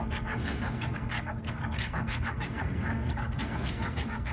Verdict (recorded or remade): remade